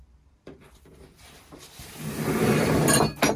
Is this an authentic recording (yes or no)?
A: no